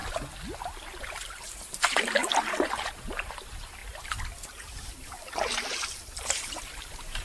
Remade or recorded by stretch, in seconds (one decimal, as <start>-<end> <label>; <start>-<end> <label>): 0.0-1.0 recorded; 1.0-2.2 remade; 2.2-2.8 recorded; 2.8-3.8 remade; 3.8-5.7 recorded; 5.7-7.2 remade